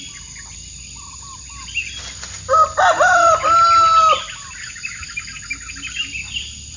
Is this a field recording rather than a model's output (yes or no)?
yes